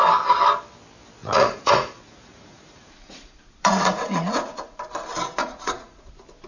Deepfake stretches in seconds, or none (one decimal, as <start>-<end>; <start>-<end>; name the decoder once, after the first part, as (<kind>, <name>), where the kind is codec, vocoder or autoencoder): 1.2-4.8 (vocoder, Vocos); 5.4-6.1